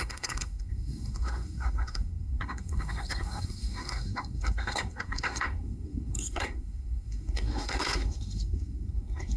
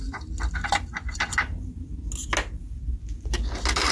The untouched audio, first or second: second